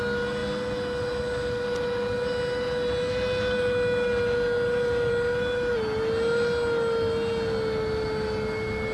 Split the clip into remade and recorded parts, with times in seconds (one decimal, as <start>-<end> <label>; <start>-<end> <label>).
0.0-8.9 recorded